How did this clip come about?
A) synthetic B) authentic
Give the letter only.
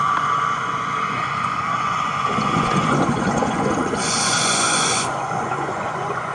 A